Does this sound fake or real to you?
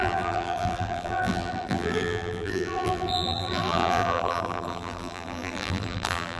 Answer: fake